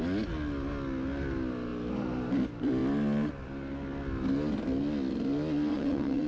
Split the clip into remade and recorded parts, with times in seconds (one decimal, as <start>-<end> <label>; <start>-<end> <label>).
0.0-5.7 recorded; 5.7-6.3 remade